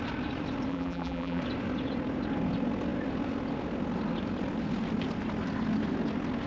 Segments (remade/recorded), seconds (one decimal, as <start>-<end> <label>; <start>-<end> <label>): 0.0-0.7 recorded; 0.7-1.4 remade; 1.4-6.5 recorded